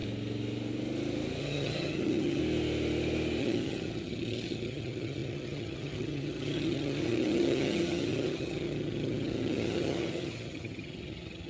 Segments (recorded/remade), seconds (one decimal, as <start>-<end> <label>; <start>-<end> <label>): 0.0-1.4 recorded; 1.4-2.4 remade; 2.4-3.4 recorded; 3.4-11.5 remade